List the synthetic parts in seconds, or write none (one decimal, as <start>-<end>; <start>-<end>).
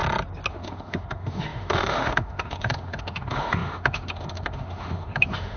0.5-5.6